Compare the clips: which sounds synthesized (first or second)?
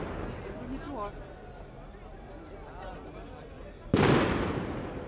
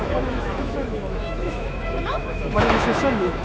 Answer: second